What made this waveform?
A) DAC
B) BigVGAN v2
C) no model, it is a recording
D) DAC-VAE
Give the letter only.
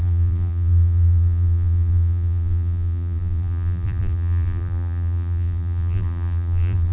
B